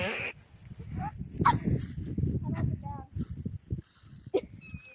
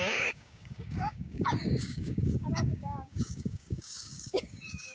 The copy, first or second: second